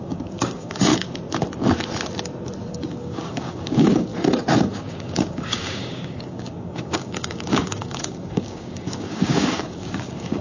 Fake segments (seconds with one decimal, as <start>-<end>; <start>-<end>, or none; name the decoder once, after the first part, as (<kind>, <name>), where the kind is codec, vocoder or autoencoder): 0.0-0.9 (codec, DAC); 2.7-4.1; 4.7-10.4